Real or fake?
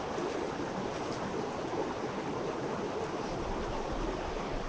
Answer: real